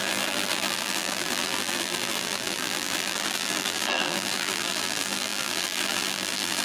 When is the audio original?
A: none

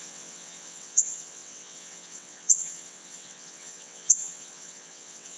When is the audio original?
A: none